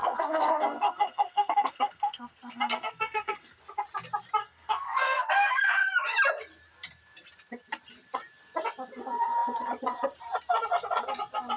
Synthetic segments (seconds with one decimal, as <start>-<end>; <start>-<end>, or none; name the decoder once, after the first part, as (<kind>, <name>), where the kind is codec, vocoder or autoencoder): 0.0-3.6 (codec, SNAC); 4.4-5.9